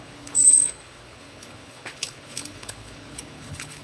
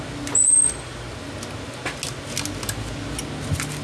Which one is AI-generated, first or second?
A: first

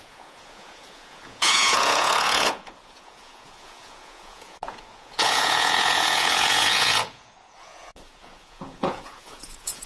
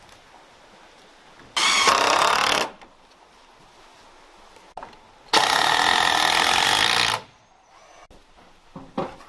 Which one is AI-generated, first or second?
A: first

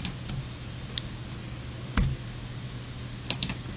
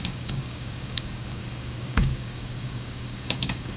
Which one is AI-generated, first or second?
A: second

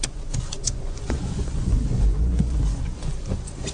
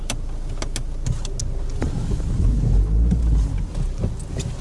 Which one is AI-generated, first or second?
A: first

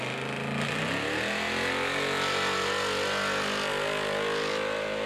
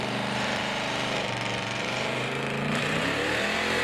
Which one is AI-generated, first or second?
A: second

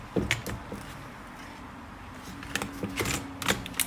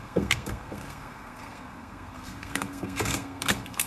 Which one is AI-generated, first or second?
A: second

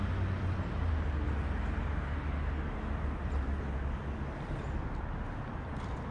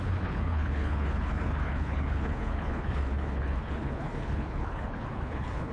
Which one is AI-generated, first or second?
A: second